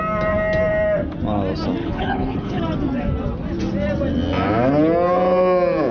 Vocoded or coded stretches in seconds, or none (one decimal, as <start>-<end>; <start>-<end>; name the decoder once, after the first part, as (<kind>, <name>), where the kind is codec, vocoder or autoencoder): 1.8-2.6 (codec, HILCodec)